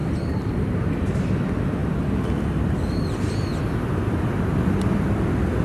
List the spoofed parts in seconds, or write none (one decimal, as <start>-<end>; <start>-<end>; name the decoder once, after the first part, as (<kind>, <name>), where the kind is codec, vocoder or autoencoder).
0.0-0.9 (vocoder, BigVGAN v2); 1.8-3.3